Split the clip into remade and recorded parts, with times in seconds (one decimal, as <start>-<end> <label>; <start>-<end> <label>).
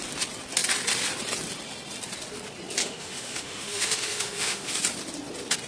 0.0-2.8 recorded; 2.8-4.8 remade; 4.8-5.7 recorded